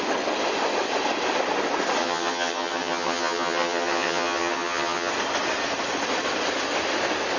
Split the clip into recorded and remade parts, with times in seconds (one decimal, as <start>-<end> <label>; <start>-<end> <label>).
0.0-2.0 recorded; 2.0-5.1 remade; 5.1-7.4 recorded